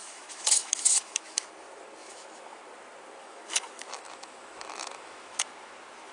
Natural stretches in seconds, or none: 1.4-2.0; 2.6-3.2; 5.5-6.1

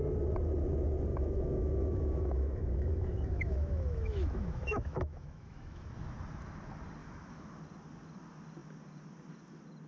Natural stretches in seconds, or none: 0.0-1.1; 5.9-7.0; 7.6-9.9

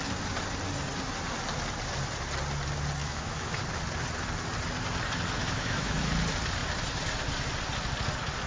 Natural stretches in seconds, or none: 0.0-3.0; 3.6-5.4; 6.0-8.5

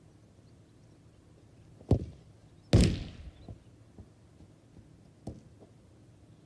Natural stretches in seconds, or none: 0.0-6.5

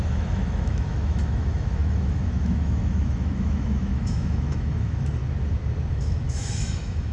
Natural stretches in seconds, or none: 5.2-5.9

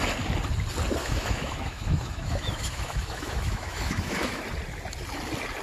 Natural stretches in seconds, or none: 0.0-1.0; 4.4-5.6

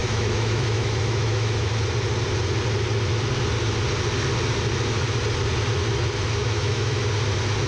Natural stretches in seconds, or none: 1.7-6.4; 7.0-7.7